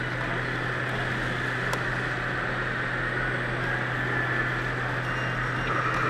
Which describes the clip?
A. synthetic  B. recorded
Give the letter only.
B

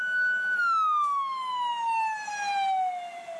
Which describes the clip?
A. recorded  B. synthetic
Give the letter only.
A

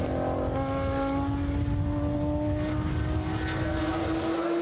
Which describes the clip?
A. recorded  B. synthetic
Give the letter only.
A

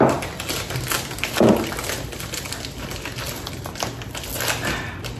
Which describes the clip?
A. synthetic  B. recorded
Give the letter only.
B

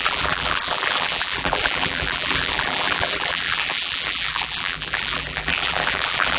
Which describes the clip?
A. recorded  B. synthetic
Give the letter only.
B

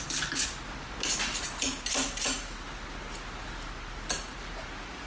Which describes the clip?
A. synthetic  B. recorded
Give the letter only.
B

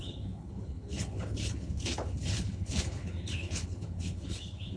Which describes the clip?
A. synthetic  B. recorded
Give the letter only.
A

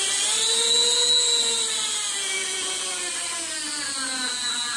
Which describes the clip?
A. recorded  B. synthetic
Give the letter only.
A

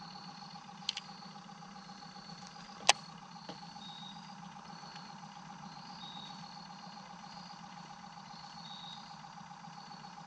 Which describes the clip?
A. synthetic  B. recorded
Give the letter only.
B